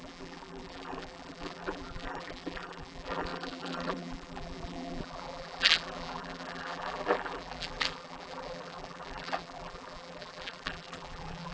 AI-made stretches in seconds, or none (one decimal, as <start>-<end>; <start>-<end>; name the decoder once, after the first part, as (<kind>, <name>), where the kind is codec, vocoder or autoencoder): 0.0-11.5 (vocoder, BigVGAN v2)